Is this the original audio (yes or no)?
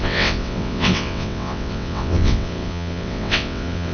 no